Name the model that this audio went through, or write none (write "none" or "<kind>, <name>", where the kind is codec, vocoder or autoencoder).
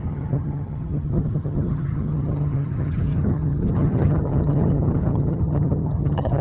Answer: vocoder, HiFi-GAN